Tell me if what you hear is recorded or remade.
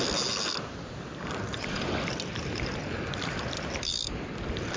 recorded